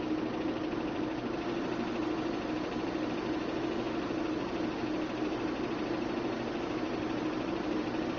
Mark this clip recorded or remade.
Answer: recorded